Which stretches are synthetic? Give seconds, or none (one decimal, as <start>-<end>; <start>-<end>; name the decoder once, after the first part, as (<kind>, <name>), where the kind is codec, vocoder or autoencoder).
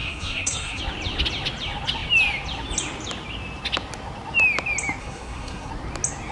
0.0-0.8 (codec, SNAC); 5.0-5.7